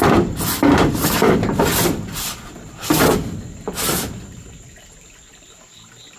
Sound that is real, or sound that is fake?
fake